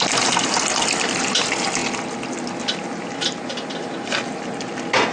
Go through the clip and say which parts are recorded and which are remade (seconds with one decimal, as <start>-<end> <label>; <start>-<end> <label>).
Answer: 0.0-5.1 recorded